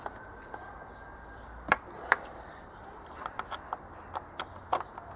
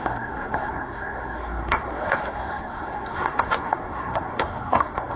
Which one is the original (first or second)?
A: first